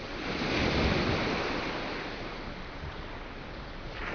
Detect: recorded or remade recorded